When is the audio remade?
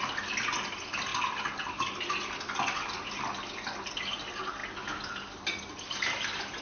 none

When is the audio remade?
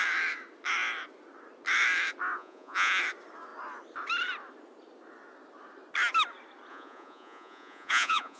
2.4-3.0 (vocoder, Vocos); 6.7-8.4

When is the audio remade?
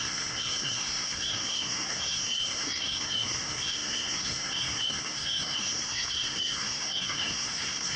0.0-8.0 (codec, SNAC)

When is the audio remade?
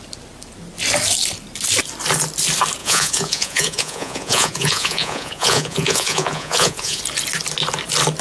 2.8-7.0 (vocoder, Vocos)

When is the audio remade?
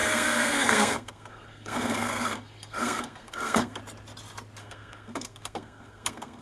0.0-3.8 (codec, SNAC); 4.6-6.4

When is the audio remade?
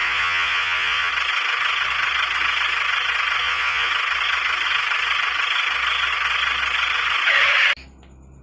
0.0-1.1 (vocoder, Vocos); 3.4-3.9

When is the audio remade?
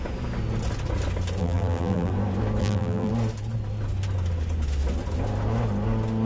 1.4-2.1 (vocoder, BigVGAN v2); 2.6-3.1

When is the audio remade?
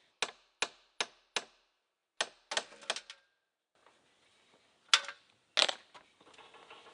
none